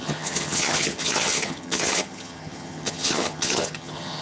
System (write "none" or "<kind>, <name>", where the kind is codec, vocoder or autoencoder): vocoder, HiFi-GAN